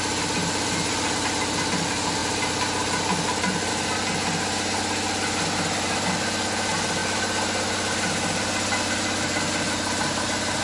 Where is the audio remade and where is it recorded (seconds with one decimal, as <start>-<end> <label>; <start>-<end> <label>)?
0.0-10.6 recorded